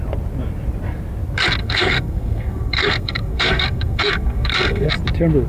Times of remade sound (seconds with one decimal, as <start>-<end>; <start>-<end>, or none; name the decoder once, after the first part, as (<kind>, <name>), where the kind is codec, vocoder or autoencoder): 1.6-4.9 (codec, SNAC)

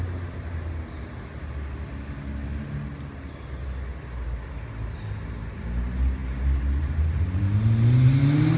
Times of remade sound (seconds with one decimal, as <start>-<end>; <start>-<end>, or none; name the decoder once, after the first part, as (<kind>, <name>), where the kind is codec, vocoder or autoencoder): none